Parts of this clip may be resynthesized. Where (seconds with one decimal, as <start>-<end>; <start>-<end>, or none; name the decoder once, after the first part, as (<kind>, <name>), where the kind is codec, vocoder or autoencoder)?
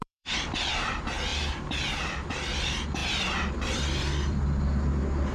0.0-0.7 (vocoder, BigVGAN v2); 1.3-2.5; 3.0-4.4